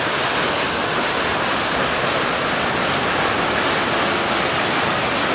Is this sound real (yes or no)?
yes